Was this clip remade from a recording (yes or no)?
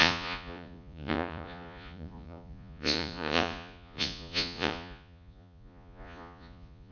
yes